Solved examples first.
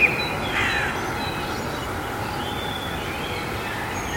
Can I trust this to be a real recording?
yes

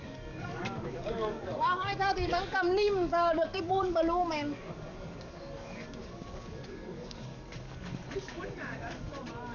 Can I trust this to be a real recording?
no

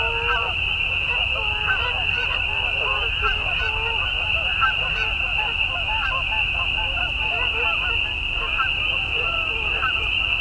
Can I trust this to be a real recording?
yes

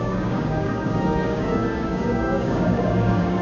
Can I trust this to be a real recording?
no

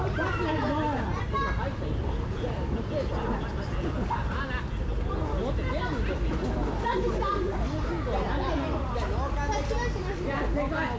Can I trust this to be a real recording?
yes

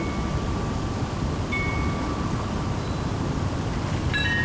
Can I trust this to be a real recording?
yes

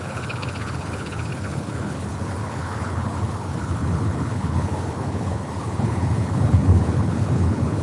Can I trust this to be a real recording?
no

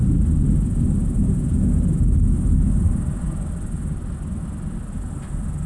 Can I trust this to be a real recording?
yes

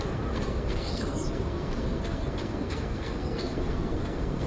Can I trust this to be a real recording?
no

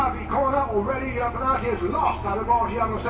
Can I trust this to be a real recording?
yes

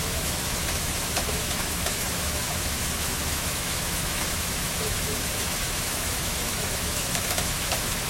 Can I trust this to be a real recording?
no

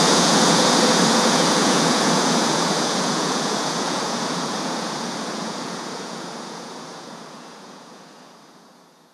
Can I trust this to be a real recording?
no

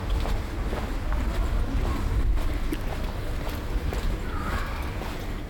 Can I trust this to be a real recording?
yes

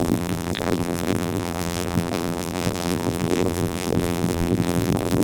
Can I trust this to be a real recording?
no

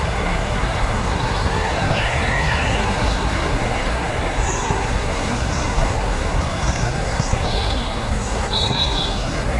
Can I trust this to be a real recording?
no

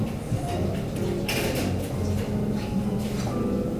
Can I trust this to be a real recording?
yes